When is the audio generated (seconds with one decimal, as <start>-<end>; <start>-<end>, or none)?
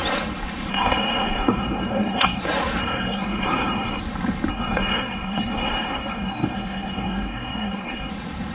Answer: 0.7-2.4; 2.8-4.0; 4.5-8.1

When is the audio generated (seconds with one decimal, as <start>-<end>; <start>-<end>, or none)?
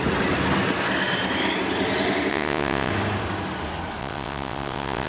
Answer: 2.3-2.9; 4.0-5.1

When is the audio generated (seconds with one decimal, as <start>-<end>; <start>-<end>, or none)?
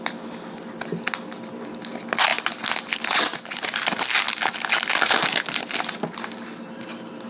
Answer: none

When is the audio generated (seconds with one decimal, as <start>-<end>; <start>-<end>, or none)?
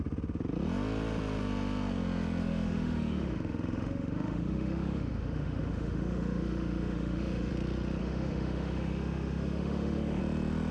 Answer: 2.4-7.5; 8.0-10.2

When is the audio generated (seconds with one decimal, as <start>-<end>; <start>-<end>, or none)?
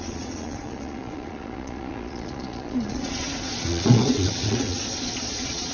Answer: 0.0-5.7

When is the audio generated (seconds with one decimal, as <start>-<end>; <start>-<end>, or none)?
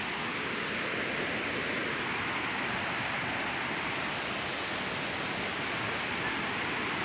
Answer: none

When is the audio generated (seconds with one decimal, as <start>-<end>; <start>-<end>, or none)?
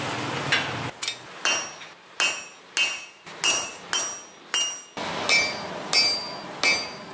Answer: none